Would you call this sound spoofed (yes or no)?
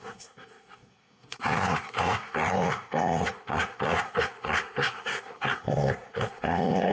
yes